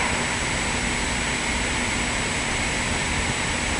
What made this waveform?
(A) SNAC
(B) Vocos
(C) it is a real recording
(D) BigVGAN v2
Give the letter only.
C